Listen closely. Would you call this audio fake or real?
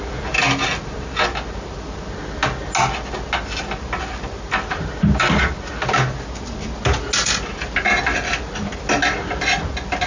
real